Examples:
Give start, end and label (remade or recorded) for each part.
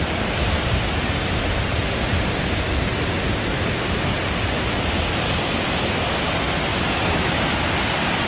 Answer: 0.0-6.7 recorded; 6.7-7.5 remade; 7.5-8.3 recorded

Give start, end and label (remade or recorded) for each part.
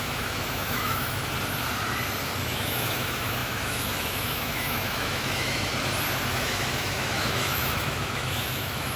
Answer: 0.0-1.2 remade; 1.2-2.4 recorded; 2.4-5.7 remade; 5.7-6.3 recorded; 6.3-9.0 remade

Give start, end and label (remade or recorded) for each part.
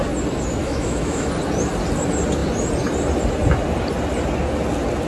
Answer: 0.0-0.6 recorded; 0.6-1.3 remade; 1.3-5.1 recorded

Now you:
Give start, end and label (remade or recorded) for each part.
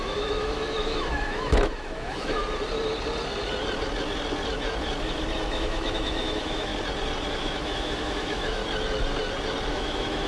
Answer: 0.0-2.4 remade; 2.4-5.5 recorded; 5.5-6.7 remade; 6.7-7.3 recorded; 7.3-8.6 remade; 8.6-9.7 recorded; 9.7-10.3 remade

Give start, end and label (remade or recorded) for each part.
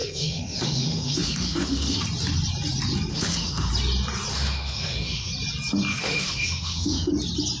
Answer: 0.0-2.0 remade; 2.0-3.1 recorded; 3.1-3.7 remade; 3.7-4.3 recorded; 4.3-5.3 remade; 5.3-5.9 recorded; 5.9-7.1 remade; 7.1-7.6 recorded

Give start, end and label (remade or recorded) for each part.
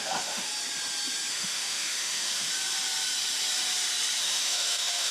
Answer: 0.0-0.5 remade; 0.5-1.3 recorded; 1.3-2.5 remade; 2.5-4.2 recorded; 4.2-5.1 remade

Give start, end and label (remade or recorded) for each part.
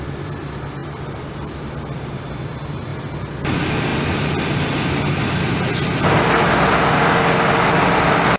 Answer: 0.0-8.4 recorded